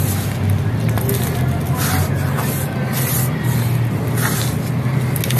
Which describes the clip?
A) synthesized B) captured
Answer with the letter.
B